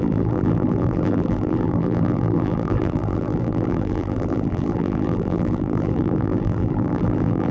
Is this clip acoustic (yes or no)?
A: no